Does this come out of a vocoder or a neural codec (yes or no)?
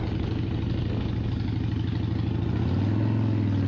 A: no